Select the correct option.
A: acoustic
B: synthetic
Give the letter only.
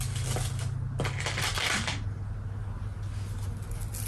A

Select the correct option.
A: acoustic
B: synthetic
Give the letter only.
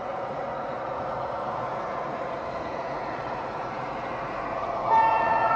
B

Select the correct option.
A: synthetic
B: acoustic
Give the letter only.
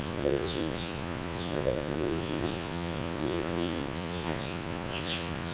A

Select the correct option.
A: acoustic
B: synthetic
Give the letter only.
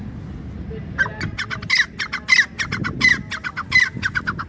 A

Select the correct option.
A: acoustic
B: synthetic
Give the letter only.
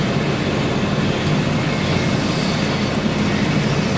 A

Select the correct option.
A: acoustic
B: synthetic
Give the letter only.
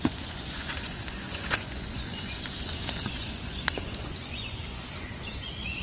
B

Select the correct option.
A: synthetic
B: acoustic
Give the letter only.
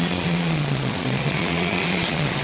A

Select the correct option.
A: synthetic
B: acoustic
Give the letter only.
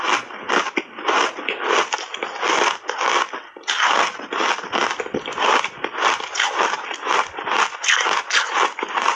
B